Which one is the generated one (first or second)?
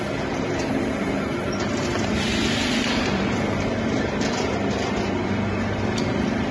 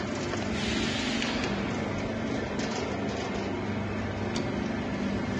first